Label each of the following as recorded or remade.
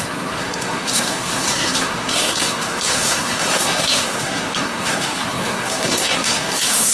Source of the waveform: remade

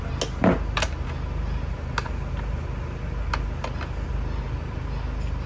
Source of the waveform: recorded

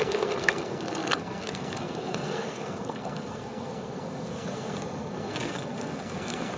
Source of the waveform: remade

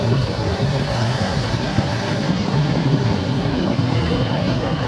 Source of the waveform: remade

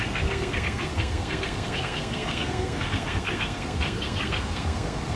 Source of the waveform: remade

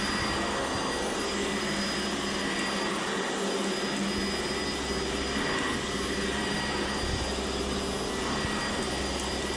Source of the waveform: recorded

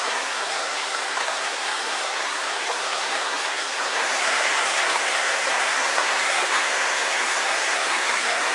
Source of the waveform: remade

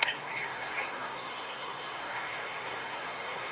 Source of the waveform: remade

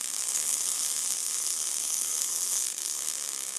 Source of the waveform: remade